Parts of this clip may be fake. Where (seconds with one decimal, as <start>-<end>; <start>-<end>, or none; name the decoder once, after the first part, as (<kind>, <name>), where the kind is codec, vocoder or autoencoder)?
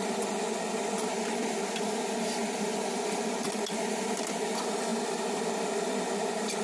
2.4-4.1 (vocoder, BigVGAN v2)